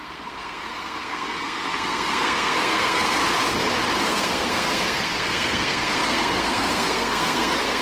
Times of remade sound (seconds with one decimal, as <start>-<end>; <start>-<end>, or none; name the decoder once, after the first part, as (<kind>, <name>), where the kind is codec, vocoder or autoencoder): 0.0-3.2 (codec, SNAC); 4.0-7.8